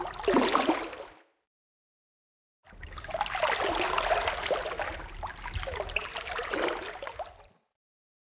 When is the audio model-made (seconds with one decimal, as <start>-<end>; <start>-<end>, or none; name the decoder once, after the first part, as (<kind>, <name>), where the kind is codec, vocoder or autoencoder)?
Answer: none

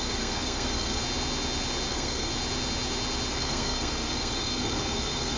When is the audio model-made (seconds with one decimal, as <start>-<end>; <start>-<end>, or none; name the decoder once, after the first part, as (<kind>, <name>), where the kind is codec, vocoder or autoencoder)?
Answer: 0.0-1.0 (codec, SNAC); 1.9-2.3; 3.3-5.4